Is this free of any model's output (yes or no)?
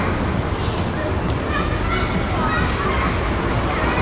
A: yes